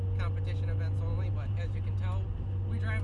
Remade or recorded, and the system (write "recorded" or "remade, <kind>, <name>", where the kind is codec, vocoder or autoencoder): recorded